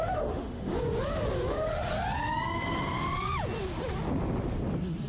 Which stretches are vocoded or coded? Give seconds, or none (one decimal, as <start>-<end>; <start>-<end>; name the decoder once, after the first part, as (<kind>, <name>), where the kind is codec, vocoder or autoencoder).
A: 0.0-0.7 (autoencoder, DAC-VAE); 1.5-1.9